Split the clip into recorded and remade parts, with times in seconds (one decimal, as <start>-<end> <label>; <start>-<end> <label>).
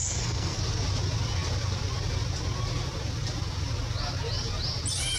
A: 0.0-0.6 remade; 0.6-5.2 recorded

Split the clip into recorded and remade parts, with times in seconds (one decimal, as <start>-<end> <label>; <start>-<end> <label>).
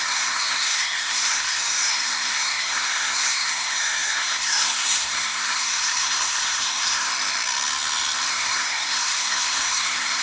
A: 0.0-7.1 remade; 7.1-8.3 recorded; 8.3-10.2 remade